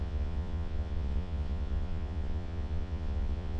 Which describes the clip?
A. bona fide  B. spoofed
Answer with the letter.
B